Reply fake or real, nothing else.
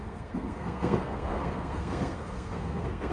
fake